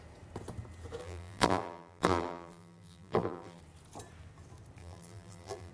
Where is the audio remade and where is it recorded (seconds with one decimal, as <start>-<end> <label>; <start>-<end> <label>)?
0.0-1.0 recorded; 1.0-3.6 remade; 3.6-4.8 recorded; 4.8-5.7 remade